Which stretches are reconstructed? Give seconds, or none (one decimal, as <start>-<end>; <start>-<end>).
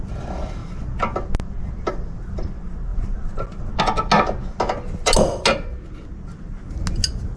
none